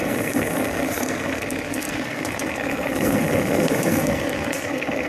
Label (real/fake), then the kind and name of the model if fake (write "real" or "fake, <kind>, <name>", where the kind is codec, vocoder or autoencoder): fake, codec, SNAC